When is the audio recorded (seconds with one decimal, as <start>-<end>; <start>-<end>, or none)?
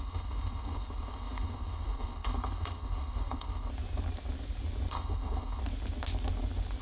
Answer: 3.7-4.9; 5.6-6.8